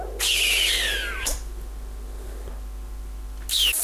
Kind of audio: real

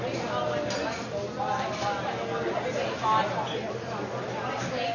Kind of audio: real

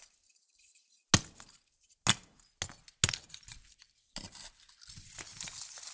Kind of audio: real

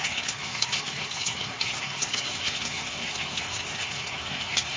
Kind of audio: fake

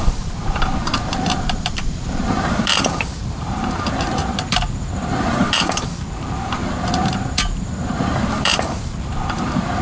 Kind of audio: fake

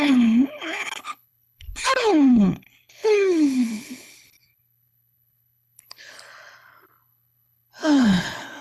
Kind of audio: fake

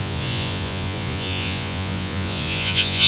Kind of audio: fake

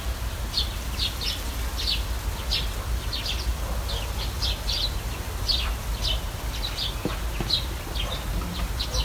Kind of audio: real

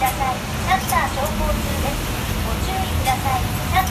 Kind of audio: real